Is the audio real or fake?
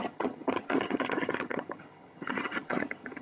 fake